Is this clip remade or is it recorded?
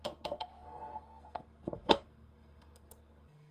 remade